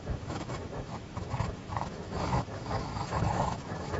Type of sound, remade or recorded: remade